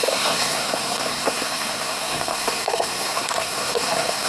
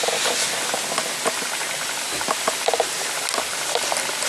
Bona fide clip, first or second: second